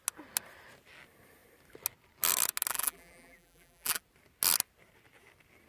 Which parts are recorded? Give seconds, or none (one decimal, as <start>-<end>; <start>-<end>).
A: 0.0-2.7; 4.0-5.7